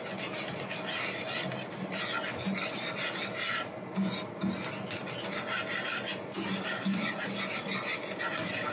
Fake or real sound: real